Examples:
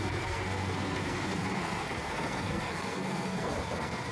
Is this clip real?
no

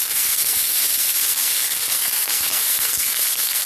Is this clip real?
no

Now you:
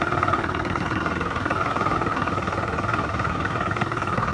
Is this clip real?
no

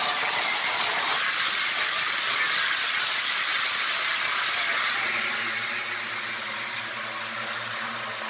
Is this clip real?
yes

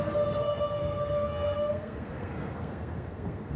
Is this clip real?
no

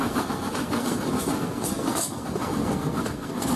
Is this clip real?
no